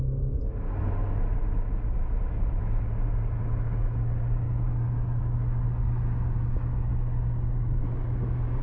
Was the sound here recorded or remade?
recorded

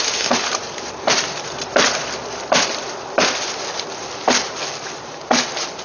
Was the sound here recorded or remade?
recorded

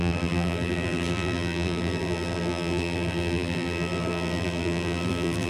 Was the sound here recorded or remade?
remade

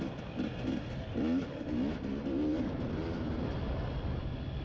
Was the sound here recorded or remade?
recorded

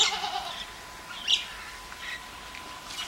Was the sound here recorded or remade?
recorded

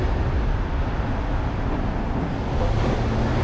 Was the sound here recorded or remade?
recorded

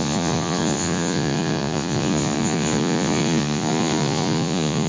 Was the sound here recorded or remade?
remade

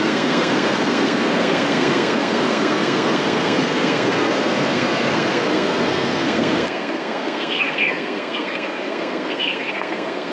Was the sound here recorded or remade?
remade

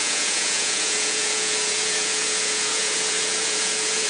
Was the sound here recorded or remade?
remade